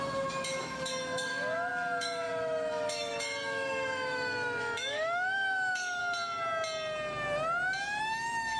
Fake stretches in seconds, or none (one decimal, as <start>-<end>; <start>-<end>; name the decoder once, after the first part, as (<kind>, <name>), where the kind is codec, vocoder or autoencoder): 0.0-6.0 (autoencoder, DAC-VAE); 8.0-8.6